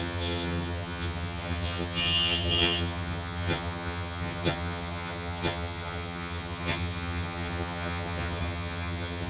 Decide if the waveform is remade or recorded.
remade